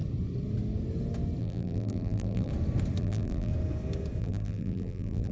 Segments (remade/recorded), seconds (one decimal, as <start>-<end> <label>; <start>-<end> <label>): 0.0-1.4 recorded; 1.4-2.5 remade; 2.5-3.0 recorded; 3.0-3.5 remade; 3.5-4.2 recorded; 4.2-5.3 remade